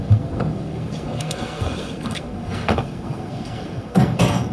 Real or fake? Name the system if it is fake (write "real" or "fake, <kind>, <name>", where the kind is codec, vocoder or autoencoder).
fake, codec, SNAC